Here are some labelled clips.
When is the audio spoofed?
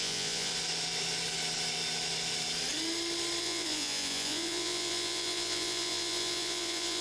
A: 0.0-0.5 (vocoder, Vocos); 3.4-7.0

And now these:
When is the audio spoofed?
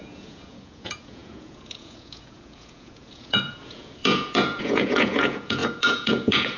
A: 0.0-6.6 (vocoder, Vocos)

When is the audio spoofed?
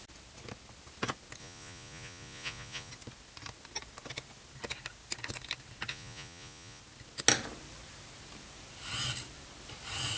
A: 1.4-2.9 (vocoder, Vocos); 5.9-6.8